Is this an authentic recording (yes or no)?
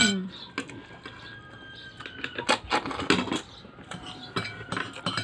yes